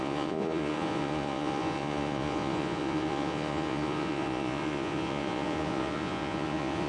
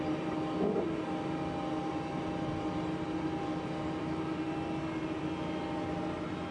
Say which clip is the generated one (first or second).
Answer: first